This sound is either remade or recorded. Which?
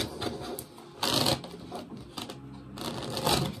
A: recorded